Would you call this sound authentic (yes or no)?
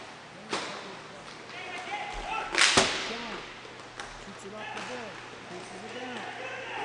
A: yes